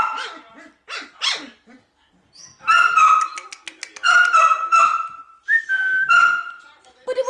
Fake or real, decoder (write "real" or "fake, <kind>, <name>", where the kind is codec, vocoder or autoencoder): real